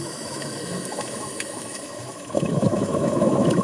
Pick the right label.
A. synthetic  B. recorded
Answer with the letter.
A